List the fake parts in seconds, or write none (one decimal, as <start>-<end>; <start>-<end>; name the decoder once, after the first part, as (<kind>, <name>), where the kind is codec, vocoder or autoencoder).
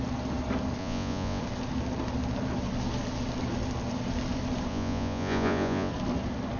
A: 0.8-1.4 (vocoder, Vocos); 4.7-5.9